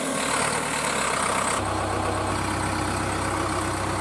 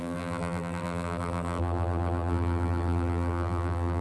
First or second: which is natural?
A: first